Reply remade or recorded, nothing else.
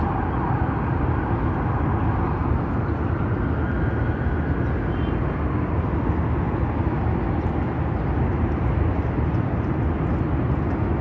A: recorded